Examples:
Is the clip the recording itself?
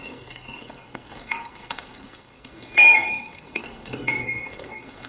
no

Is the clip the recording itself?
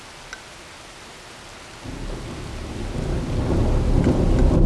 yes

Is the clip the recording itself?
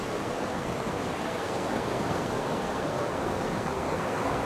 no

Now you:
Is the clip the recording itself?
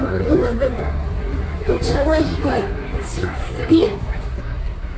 no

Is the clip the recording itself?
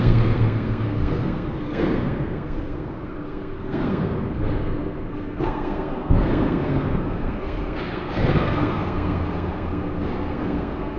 no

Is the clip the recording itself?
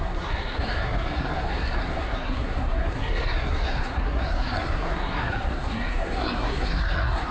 no